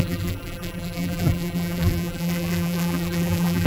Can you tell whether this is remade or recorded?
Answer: remade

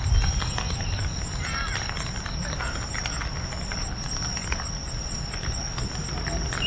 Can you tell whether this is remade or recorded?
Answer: recorded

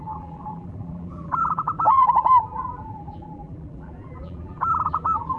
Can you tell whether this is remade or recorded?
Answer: remade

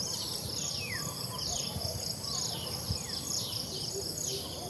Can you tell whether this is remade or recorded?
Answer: remade